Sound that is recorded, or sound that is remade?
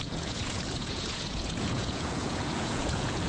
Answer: remade